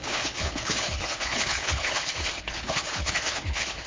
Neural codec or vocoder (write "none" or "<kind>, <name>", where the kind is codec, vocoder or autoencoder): codec, HILCodec